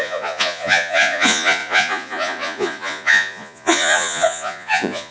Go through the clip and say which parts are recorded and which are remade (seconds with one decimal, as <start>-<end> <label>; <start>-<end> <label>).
0.0-5.1 remade